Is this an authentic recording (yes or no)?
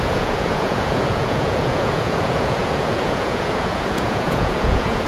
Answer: no